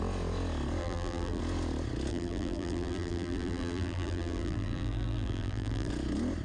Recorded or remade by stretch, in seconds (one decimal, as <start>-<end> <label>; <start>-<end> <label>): 0.0-0.8 recorded; 0.8-1.4 remade; 1.4-2.1 recorded; 2.1-5.9 remade; 5.9-6.4 recorded